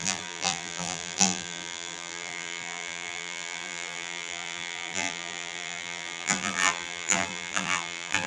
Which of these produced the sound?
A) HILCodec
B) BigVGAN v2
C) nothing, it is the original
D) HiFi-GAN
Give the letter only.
B